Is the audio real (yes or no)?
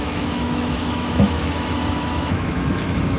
no